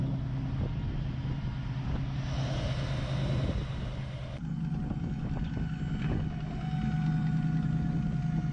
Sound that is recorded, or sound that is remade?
recorded